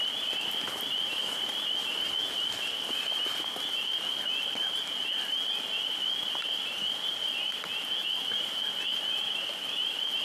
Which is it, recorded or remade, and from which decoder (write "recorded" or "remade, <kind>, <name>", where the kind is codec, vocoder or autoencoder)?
recorded